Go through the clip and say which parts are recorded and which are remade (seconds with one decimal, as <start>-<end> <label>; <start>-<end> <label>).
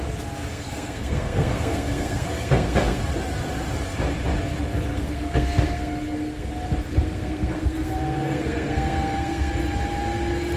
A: 0.0-0.5 recorded; 0.5-3.0 remade; 3.0-4.9 recorded; 4.9-6.5 remade; 6.5-6.9 recorded; 6.9-9.5 remade; 9.5-10.6 recorded